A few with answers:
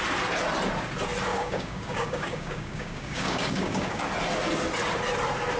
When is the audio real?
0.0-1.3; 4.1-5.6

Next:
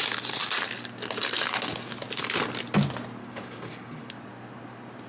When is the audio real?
0.0-3.2; 4.0-5.1

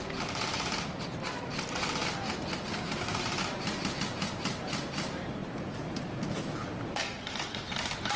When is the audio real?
0.0-2.7; 3.2-8.2

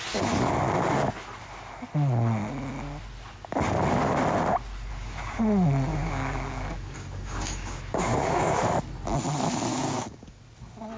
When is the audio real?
0.0-4.9; 5.4-5.9; 8.6-9.7; 10.4-11.0

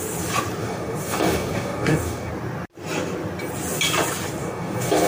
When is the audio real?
0.0-0.6; 2.3-4.4

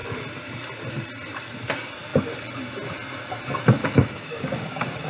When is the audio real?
0.0-3.8